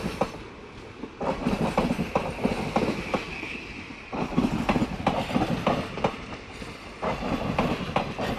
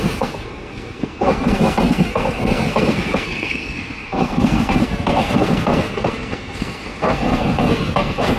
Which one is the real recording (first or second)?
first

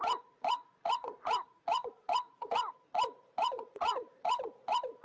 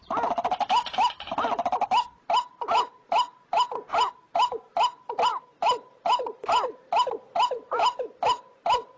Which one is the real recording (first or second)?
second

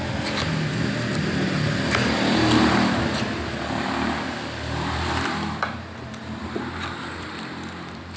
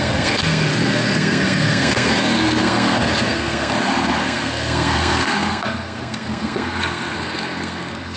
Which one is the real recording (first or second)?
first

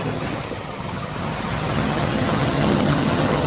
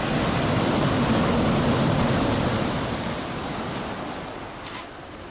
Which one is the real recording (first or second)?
second